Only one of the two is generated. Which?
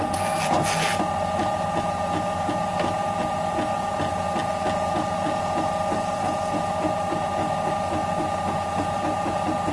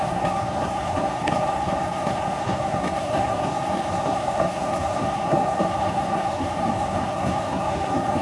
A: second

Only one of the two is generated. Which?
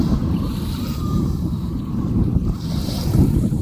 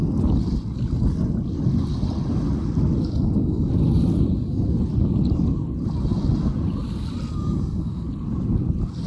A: first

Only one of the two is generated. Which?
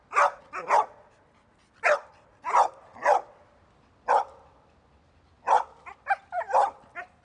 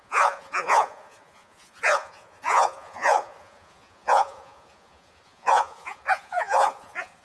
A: second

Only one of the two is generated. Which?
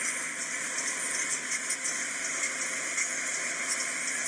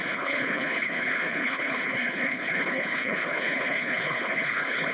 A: second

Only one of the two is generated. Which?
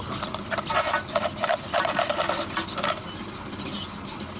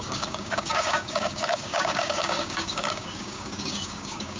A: second